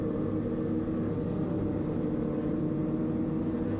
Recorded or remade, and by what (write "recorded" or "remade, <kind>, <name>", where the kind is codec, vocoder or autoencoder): recorded